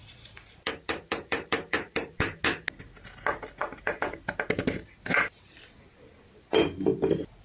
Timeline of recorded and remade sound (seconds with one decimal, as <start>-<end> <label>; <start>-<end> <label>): 0.0-2.4 remade; 2.4-3.6 recorded; 3.6-4.3 remade; 4.3-7.4 recorded